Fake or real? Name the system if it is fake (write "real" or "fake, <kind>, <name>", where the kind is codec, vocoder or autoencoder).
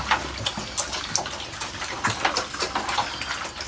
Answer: real